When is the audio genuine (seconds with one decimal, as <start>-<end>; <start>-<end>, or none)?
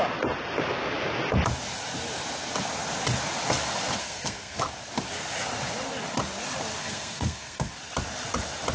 0.0-4.0; 4.6-6.8; 7.7-8.7